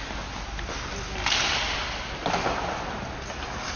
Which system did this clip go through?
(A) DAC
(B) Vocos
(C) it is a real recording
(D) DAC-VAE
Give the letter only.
C